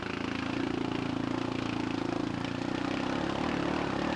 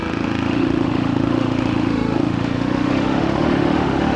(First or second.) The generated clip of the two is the second